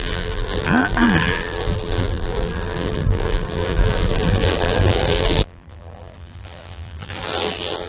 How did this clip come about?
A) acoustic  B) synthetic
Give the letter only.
B